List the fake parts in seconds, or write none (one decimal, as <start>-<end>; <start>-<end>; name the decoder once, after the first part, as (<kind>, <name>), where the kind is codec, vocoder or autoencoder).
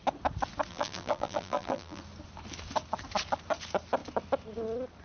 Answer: 0.7-2.0 (vocoder, BigVGAN v2)